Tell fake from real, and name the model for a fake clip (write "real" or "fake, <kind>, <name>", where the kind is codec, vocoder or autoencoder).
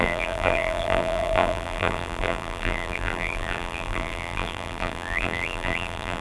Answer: fake, vocoder, BigVGAN v2